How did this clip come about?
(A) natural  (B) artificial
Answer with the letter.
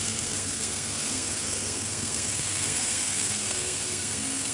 B